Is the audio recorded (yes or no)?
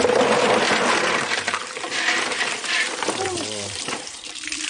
no